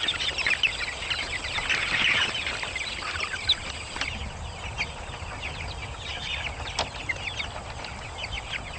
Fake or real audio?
real